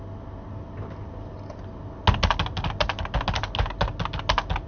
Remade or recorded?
recorded